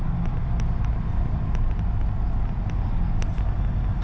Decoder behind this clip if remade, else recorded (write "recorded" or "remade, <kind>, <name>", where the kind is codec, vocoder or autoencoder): recorded